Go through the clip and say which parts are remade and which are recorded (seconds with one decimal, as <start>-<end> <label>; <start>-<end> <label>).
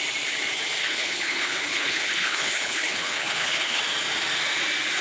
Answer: 0.0-0.8 recorded; 0.8-3.8 remade; 3.8-5.0 recorded